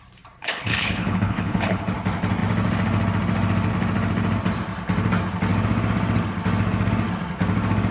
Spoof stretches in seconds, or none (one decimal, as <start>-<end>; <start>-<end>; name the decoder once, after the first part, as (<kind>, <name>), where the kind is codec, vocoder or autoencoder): 0.4-1.8 (codec, HILCodec)